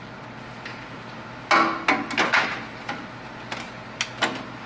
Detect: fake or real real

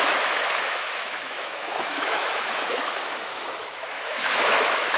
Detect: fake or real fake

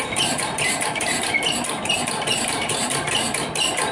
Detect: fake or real fake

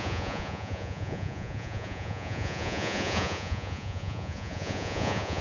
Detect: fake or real fake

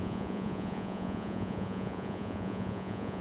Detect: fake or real fake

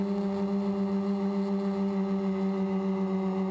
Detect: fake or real real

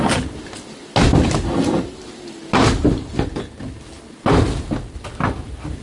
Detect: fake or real real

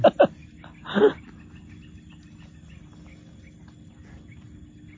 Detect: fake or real real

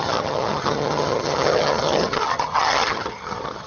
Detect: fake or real fake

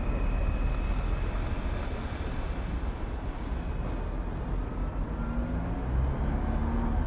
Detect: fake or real real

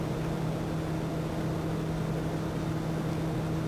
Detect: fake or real real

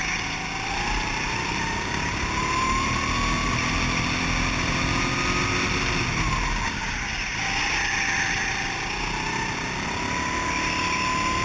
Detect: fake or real real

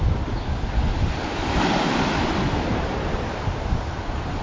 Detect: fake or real real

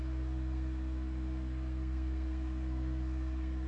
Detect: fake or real fake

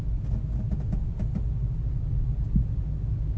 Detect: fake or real real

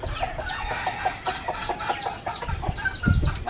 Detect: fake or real real